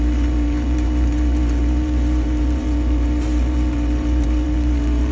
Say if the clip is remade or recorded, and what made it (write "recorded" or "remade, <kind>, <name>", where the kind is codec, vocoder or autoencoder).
remade, vocoder, BigVGAN v2